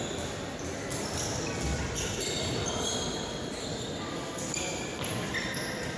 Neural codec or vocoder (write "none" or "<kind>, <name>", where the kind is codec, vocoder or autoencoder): none